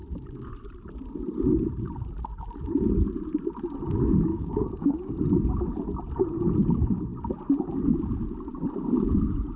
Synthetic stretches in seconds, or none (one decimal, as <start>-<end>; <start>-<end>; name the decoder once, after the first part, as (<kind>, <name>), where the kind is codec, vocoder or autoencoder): 4.3-5.1 (codec, DAC)